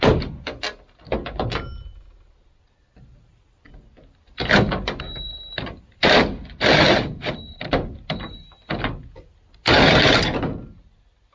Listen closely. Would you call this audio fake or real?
real